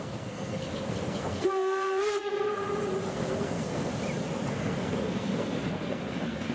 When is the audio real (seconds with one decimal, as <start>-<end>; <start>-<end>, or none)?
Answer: 2.6-3.1; 3.9-4.5